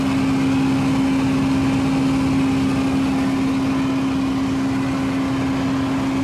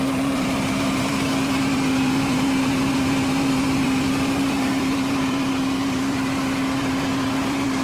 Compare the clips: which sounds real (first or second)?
first